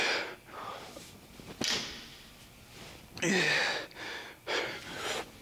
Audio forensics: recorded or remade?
recorded